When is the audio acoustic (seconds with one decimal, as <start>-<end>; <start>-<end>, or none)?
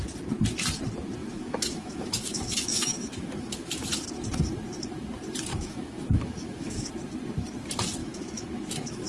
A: 0.0-1.2; 4.0-5.5; 6.9-8.0